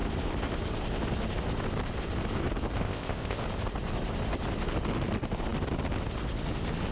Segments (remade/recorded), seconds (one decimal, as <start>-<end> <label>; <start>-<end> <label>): 0.0-2.8 recorded; 2.8-3.4 remade; 3.4-6.9 recorded